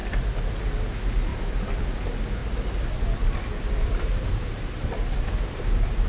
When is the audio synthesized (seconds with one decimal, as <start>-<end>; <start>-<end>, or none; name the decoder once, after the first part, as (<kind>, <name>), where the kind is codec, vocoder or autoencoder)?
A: 0.0-0.6 (vocoder, BigVGAN v2); 1.3-2.0; 2.4-6.1